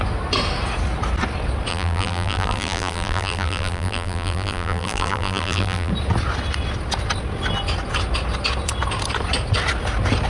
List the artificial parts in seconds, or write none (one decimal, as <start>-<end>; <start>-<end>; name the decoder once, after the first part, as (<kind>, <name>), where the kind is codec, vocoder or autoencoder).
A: 1.7-5.9 (vocoder, BigVGAN v2)